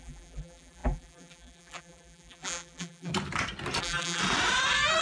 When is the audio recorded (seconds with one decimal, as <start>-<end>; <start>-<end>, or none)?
3.1-3.8; 4.2-5.0